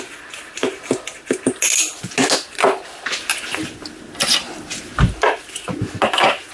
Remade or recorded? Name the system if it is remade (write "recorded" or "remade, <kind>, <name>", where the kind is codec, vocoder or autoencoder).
recorded